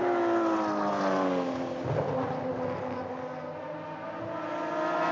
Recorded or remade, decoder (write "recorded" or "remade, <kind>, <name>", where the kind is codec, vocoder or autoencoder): recorded